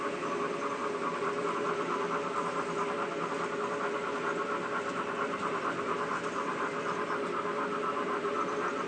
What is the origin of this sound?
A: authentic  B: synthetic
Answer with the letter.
A